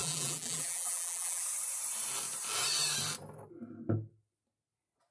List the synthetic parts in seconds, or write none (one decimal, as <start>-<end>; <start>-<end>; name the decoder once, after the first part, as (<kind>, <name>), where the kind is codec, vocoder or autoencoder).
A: 0.0-1.4 (vocoder, BigVGAN v2)